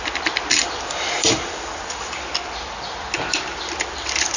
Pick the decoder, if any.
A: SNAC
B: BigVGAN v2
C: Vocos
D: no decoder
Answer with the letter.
B